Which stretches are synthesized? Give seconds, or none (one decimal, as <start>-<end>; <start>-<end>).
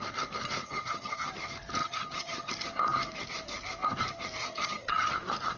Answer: 0.6-1.3; 1.8-2.5; 4.4-5.1